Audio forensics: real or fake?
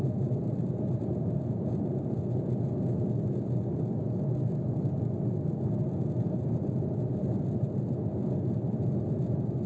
real